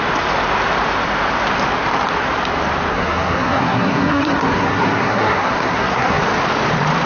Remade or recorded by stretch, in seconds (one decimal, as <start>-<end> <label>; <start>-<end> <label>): 0.0-2.9 recorded; 2.9-6.3 remade; 6.3-7.1 recorded